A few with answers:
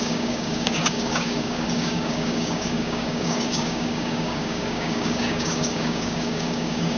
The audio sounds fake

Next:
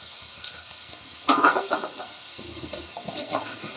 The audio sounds fake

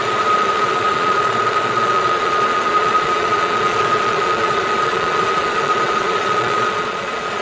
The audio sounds fake